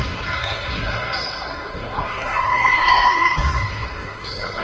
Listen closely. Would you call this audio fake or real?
fake